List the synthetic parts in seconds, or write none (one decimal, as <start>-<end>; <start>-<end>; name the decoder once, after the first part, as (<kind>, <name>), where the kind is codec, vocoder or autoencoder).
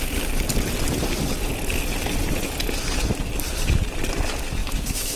4.6-5.2 (autoencoder, DAC-VAE)